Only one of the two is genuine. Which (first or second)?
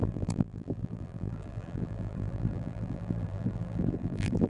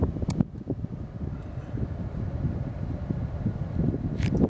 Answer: second